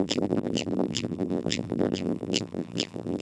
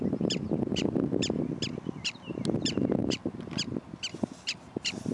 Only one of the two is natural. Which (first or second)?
second